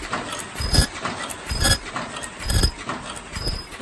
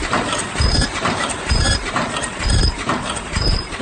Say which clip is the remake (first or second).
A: second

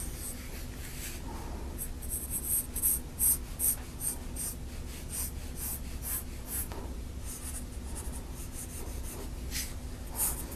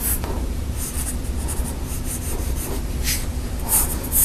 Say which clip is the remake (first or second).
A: second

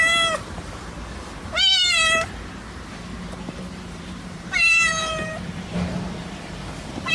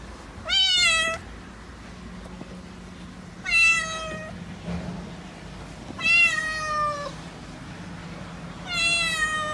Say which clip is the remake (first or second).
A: first